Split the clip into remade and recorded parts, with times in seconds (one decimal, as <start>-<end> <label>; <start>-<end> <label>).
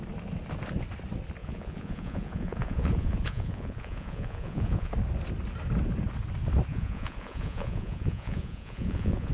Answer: 0.0-1.4 recorded; 1.4-4.9 remade; 4.9-6.7 recorded; 6.7-9.3 remade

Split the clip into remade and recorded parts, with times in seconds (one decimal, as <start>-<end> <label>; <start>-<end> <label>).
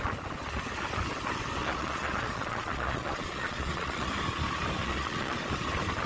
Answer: 0.0-1.6 recorded; 1.6-4.1 remade; 4.1-4.8 recorded; 4.8-5.4 remade; 5.4-6.1 recorded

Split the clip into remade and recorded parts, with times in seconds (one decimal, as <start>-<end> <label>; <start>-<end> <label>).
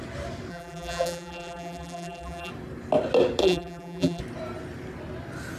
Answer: 0.0-0.5 recorded; 0.5-2.5 remade; 2.5-3.4 recorded; 3.4-4.2 remade; 4.2-5.6 recorded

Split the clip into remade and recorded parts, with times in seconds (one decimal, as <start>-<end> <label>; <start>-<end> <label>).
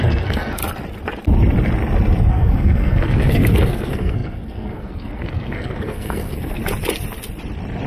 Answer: 0.0-0.6 remade; 0.6-2.3 recorded; 2.3-6.6 remade; 6.6-7.9 recorded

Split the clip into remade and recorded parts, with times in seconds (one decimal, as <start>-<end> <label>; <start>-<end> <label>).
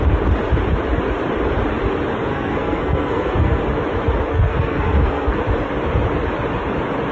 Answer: 0.0-2.3 recorded; 2.3-3.6 remade; 3.6-4.3 recorded; 4.3-5.4 remade; 5.4-7.1 recorded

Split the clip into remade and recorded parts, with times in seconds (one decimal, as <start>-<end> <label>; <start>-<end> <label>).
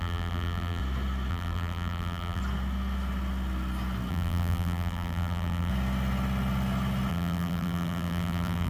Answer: 0.0-0.8 remade; 0.8-1.3 recorded; 1.3-2.4 remade; 2.4-4.1 recorded; 4.1-5.7 remade; 5.7-7.1 recorded; 7.1-8.7 remade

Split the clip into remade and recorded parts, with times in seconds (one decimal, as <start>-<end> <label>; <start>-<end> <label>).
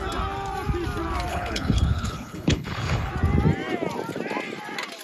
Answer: 0.0-1.3 recorded; 1.3-3.1 remade; 3.1-5.0 recorded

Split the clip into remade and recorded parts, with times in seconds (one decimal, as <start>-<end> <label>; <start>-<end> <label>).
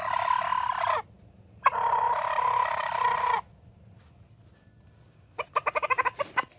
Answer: 0.0-6.6 recorded